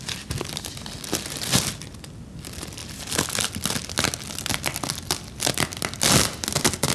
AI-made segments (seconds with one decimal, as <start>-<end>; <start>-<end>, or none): none